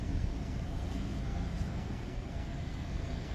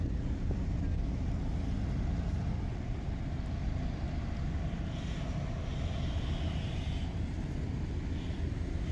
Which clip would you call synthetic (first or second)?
first